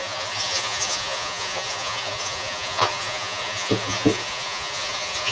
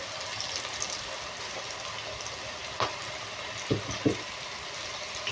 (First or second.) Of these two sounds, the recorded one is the second